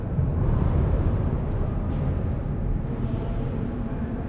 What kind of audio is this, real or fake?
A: fake